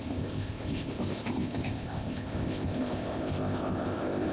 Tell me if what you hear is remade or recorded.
remade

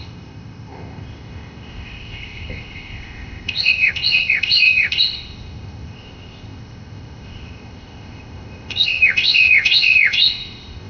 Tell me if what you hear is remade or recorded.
remade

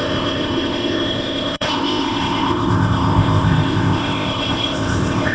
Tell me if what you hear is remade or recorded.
remade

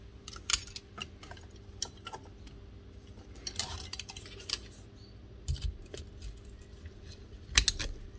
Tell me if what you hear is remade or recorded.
recorded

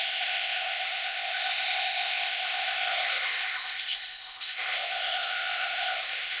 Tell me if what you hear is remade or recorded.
remade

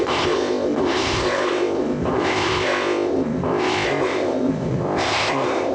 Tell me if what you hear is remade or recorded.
remade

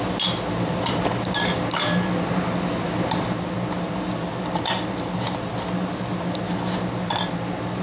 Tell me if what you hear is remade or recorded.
recorded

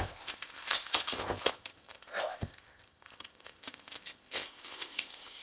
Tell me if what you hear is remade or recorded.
remade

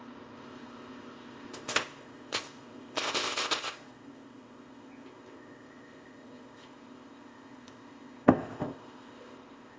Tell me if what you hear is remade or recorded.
remade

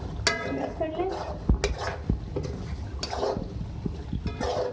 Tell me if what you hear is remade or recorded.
recorded